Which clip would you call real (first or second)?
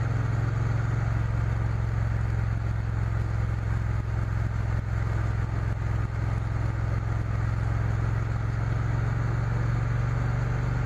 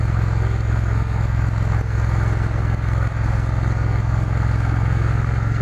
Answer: first